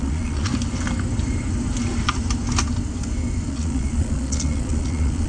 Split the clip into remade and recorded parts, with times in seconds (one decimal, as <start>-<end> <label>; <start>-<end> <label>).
0.0-0.5 remade; 0.5-3.5 recorded; 3.5-5.3 remade